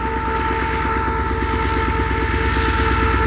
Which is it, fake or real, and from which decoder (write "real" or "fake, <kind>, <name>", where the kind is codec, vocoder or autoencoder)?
real